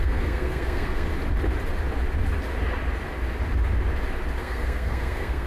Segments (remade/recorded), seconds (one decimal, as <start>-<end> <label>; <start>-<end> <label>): 0.0-1.1 remade; 1.1-4.4 recorded; 4.4-5.5 remade